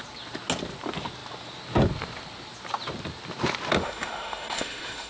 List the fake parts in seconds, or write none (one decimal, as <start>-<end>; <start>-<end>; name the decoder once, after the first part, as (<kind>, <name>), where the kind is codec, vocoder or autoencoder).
3.8-5.1 (autoencoder, DAC-VAE)